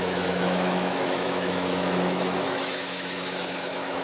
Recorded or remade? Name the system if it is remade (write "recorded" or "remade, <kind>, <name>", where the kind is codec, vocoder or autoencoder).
remade, autoencoder, DAC-VAE